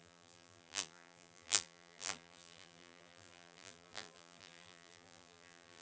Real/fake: fake